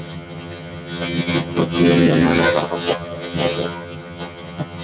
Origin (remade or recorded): remade